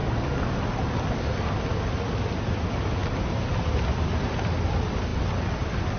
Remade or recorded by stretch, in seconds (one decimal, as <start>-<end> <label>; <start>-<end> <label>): 0.0-6.0 recorded